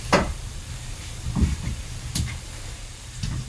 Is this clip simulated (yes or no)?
yes